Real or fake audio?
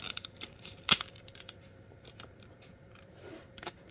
fake